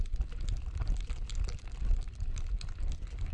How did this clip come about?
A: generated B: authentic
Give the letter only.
B